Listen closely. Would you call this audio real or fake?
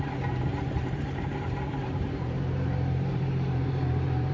fake